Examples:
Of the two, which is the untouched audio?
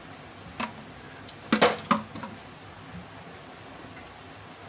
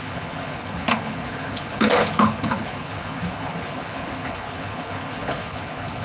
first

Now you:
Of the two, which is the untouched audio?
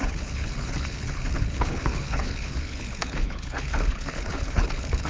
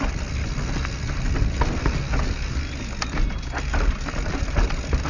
second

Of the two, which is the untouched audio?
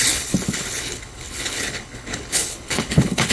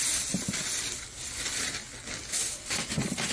second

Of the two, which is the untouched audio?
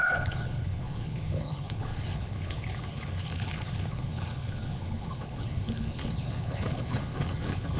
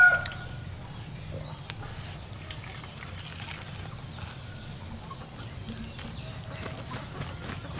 second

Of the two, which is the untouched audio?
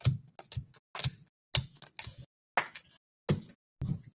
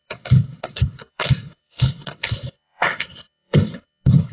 first